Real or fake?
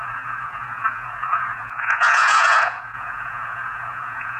fake